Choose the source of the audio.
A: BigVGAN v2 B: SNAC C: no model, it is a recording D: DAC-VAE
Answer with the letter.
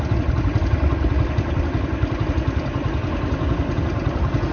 C